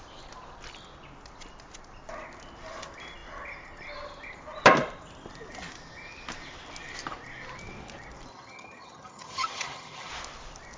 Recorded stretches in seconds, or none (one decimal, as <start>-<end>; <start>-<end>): 0.0-8.3; 10.1-10.8